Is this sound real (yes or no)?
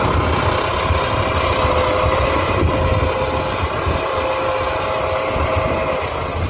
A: yes